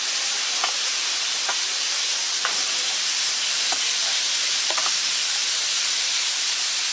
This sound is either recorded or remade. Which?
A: remade